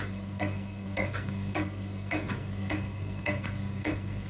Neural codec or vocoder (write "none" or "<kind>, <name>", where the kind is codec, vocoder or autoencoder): codec, SNAC